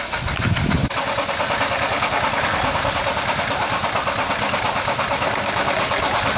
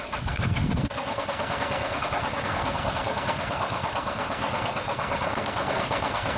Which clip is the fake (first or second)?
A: second